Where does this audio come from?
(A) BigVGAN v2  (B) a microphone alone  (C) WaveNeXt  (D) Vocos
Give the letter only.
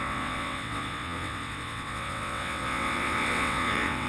C